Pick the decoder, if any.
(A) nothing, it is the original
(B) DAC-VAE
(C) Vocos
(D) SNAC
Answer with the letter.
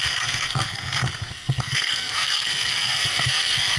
D